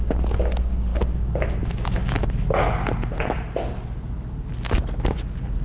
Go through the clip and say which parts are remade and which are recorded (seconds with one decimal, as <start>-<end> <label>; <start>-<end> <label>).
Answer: 0.0-5.6 recorded

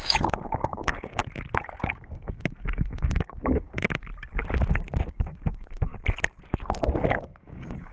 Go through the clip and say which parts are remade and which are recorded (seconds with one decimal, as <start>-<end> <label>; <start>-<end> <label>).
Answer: 0.0-1.2 remade; 1.2-1.8 recorded; 1.8-4.1 remade; 4.1-5.1 recorded; 5.1-5.9 remade; 5.9-7.1 recorded; 7.1-7.9 remade

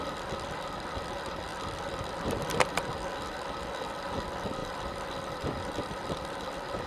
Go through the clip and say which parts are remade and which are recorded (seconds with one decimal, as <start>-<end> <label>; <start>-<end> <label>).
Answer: 0.0-4.6 recorded; 4.6-6.5 remade; 6.5-6.9 recorded

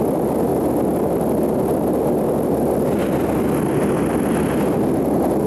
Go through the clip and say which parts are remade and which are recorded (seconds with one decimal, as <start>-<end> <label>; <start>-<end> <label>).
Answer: 0.0-5.5 recorded

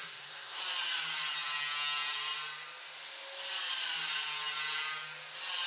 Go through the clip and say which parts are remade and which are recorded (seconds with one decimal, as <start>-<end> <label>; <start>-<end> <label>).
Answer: 0.0-0.6 remade; 0.6-5.7 recorded

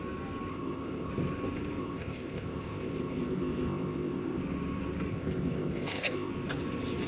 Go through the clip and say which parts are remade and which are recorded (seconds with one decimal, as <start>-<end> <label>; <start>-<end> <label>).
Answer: 0.0-0.5 recorded; 0.5-1.1 remade; 1.1-1.8 recorded; 1.8-4.4 remade; 4.4-5.1 recorded; 5.1-6.3 remade; 6.3-7.1 recorded

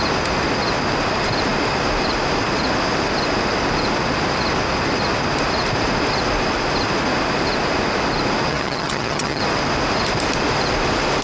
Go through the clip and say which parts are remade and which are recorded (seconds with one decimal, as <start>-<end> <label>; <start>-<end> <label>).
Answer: 0.0-8.5 recorded; 8.5-9.4 remade; 9.4-11.2 recorded